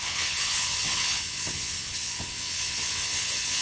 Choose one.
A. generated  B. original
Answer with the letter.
A